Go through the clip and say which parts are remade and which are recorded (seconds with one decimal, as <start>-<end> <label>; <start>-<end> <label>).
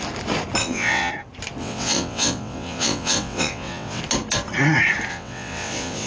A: 0.0-0.6 recorded; 0.6-1.1 remade; 1.1-1.6 recorded; 1.6-4.0 remade; 4.0-5.1 recorded; 5.1-6.1 remade